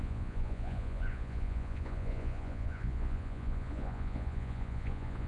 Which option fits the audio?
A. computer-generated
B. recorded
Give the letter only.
A